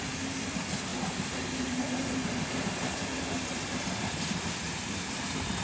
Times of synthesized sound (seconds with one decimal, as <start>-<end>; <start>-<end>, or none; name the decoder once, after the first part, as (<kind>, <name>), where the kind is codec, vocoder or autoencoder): none

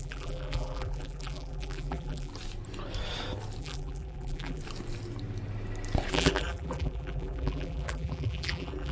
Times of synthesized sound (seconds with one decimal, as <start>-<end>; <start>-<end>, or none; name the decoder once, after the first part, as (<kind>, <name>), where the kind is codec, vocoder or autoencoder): 0.0-2.3 (vocoder, BigVGAN v2); 3.6-4.6; 6.1-8.9

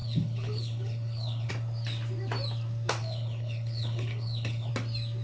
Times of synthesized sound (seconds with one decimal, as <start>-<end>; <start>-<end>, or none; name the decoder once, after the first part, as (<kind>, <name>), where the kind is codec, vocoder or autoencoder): 0.0-1.5 (codec, HILCodec); 3.0-4.7